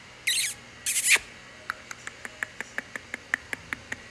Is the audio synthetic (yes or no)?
no